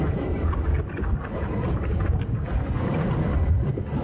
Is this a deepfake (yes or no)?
no